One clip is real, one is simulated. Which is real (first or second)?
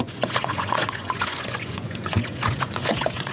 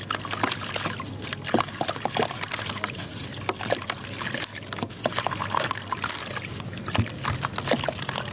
second